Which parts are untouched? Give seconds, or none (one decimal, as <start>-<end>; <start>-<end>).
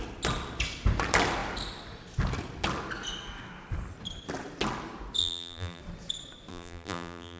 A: 0.0-5.2; 5.8-6.5